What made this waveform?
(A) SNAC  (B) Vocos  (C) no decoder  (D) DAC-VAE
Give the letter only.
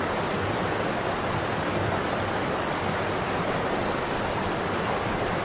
C